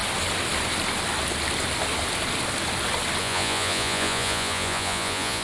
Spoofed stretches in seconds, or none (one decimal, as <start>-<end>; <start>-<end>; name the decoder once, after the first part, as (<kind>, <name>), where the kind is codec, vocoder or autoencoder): 3.2-5.4 (vocoder, Vocos)